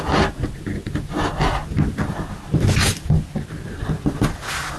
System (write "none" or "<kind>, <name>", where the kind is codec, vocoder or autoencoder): none